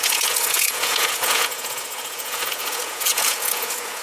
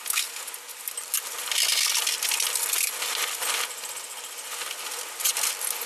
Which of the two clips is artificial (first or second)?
first